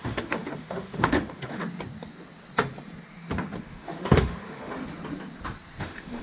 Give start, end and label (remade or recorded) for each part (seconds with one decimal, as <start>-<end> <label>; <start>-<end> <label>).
0.0-1.6 remade; 1.6-3.6 recorded; 3.6-4.8 remade; 4.8-5.8 recorded; 5.8-6.2 remade